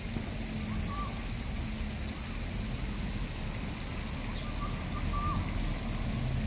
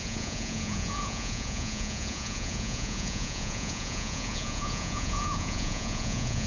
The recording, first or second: first